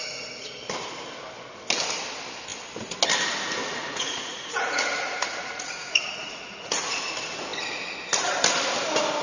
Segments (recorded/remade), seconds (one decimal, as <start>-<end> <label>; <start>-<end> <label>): 0.0-3.6 recorded; 3.6-7.1 remade; 7.1-9.2 recorded